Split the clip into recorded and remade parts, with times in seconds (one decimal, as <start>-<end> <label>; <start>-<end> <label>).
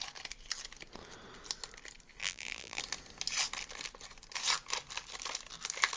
0.0-2.2 recorded; 2.2-2.8 remade; 2.8-6.0 recorded